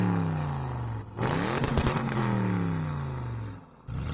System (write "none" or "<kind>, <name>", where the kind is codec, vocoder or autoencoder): none